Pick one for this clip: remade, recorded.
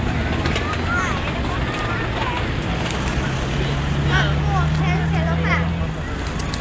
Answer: recorded